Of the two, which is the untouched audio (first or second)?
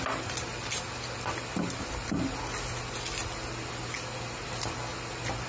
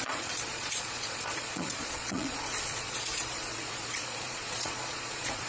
first